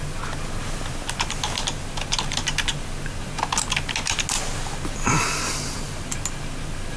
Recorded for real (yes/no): yes